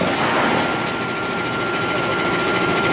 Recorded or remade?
recorded